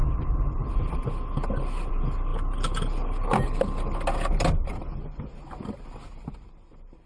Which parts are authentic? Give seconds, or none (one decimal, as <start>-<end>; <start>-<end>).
0.0-7.1